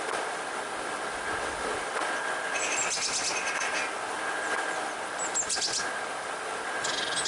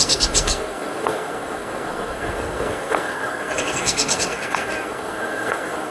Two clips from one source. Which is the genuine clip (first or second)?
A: first